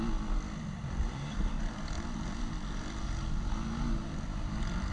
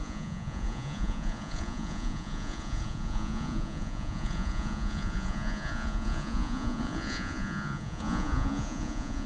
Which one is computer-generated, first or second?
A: second